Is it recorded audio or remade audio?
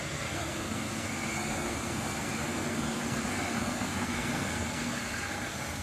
remade